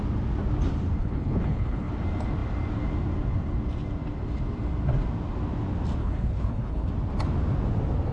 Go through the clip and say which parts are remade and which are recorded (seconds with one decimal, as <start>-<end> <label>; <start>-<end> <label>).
0.0-1.0 recorded; 1.0-1.9 remade; 1.9-6.0 recorded; 6.0-6.9 remade; 6.9-8.1 recorded